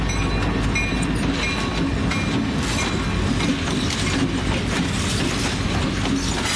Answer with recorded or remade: recorded